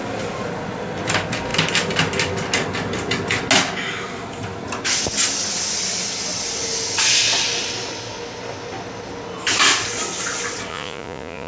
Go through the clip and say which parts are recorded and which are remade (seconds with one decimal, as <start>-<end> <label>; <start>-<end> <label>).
0.0-10.7 recorded; 10.7-11.5 remade